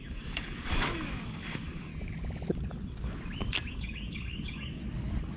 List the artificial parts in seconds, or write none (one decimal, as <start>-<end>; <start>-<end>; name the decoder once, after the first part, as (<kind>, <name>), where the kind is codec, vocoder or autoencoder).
0.0-1.9 (codec, DAC); 3.7-4.8